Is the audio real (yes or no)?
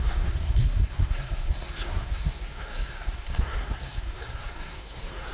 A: no